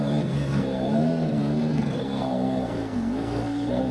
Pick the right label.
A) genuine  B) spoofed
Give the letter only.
B